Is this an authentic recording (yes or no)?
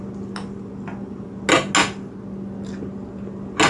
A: yes